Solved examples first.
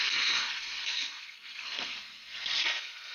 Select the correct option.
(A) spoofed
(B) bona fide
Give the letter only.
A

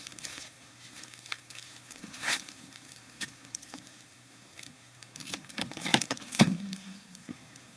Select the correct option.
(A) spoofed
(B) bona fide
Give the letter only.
A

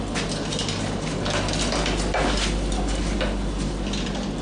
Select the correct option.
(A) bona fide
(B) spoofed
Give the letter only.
A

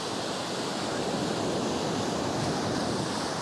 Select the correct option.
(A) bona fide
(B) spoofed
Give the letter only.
A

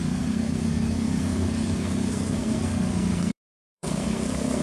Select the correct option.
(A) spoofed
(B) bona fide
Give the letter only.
A